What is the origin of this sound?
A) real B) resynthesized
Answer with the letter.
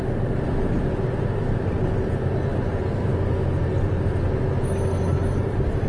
A